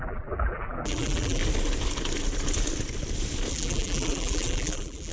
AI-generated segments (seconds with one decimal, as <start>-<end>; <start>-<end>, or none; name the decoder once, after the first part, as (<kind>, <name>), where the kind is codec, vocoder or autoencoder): 0.0-1.4 (vocoder, BigVGAN v2); 3.5-5.1